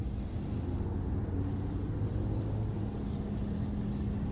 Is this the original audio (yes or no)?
yes